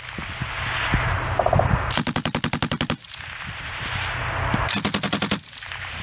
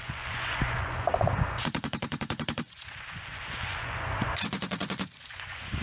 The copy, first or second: second